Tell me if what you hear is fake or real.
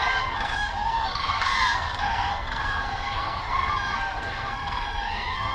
fake